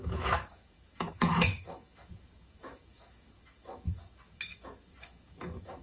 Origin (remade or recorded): remade